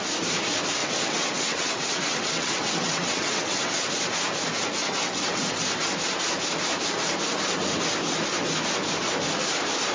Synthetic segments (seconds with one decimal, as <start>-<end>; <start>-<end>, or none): 0.8-3.9; 4.8-5.6